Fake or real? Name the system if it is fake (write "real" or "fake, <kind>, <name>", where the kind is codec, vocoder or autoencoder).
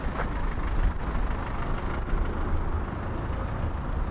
real